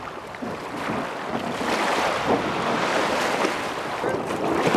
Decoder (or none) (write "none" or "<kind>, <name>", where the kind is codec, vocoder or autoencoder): none